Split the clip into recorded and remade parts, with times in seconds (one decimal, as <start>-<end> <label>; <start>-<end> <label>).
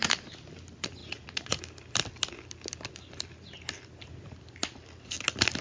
0.0-1.0 recorded; 1.0-1.6 remade; 1.6-5.6 recorded